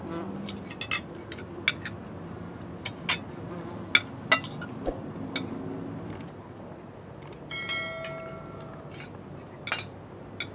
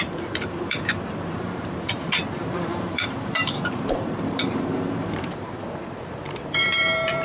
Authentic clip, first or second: first